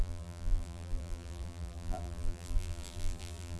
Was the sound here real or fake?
fake